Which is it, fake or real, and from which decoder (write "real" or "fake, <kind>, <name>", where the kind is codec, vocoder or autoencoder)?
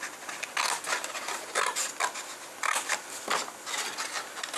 real